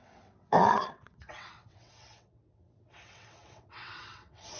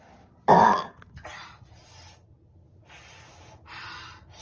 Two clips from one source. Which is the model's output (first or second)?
first